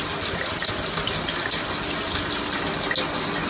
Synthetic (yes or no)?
no